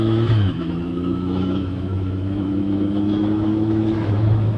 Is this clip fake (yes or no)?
yes